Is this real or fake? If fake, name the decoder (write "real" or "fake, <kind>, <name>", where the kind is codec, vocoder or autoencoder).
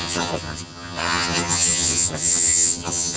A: fake, vocoder, HiFi-GAN